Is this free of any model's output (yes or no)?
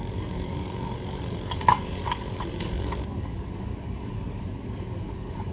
no